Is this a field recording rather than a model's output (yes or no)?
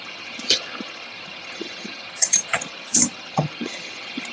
no